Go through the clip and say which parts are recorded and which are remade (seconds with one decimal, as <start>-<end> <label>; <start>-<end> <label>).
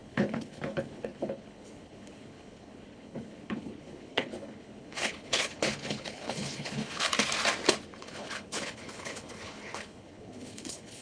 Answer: 0.0-7.1 remade; 7.1-8.0 recorded; 8.0-11.0 remade